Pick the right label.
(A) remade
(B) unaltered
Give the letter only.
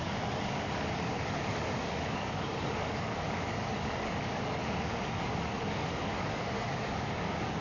A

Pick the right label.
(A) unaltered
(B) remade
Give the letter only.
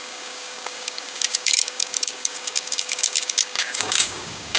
B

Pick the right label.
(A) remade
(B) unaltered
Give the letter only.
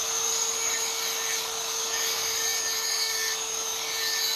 A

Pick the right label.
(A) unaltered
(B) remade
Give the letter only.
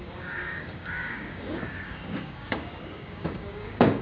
B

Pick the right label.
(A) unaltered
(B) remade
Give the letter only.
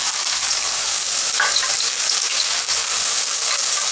B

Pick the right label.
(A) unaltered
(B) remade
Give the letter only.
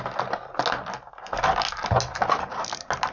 A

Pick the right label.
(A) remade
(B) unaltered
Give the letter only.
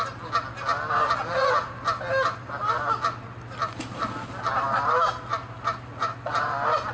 B